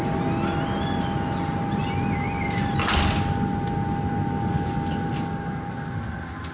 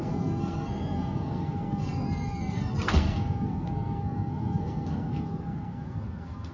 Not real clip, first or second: second